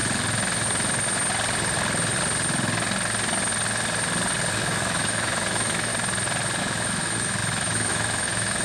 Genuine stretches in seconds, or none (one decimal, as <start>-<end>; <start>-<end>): 0.0-4.5; 5.9-6.6